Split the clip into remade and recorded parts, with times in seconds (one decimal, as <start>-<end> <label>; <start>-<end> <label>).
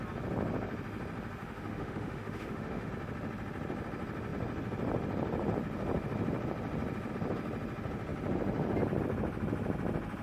0.0-1.4 recorded; 1.4-2.9 remade; 2.9-10.2 recorded